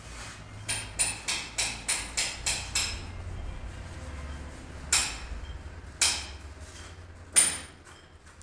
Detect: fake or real real